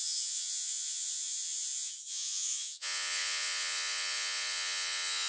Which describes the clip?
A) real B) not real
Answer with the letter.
B